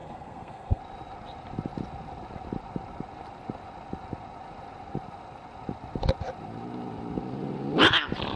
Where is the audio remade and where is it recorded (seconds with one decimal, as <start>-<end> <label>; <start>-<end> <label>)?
0.0-0.8 remade; 0.8-8.4 recorded